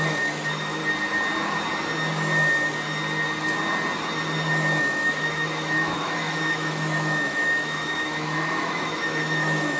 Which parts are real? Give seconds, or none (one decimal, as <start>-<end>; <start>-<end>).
0.8-4.8